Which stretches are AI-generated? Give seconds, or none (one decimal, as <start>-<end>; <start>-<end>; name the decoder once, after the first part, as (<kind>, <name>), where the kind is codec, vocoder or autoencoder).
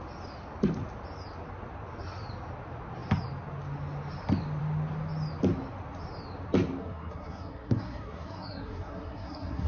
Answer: 6.8-9.7 (codec, SNAC)